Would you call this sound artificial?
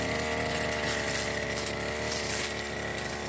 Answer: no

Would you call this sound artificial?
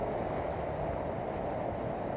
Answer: no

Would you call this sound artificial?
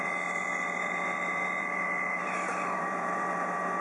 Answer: yes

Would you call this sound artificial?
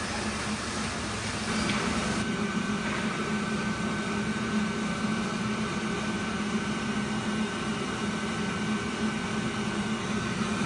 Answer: no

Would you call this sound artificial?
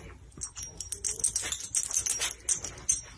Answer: no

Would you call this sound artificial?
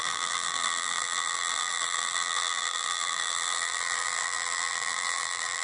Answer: yes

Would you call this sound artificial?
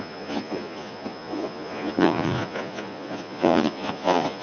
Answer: yes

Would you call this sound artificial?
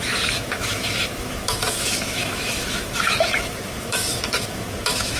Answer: yes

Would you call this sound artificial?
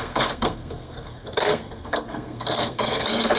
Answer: yes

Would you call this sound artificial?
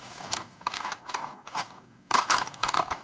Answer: yes